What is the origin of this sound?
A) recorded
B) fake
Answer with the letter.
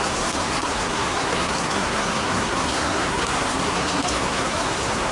B